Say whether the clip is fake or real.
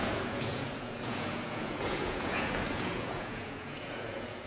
fake